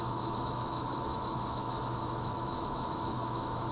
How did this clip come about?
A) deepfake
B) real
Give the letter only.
A